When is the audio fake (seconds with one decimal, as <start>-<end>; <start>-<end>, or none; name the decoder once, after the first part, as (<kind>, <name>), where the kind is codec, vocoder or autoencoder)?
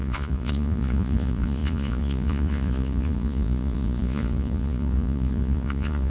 0.0-6.1 (vocoder, Vocos)